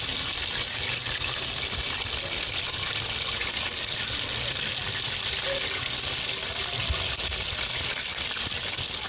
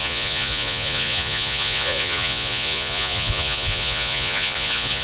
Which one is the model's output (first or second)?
second